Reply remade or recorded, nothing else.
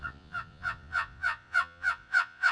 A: remade